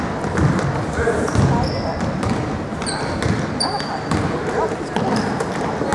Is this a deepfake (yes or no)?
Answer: no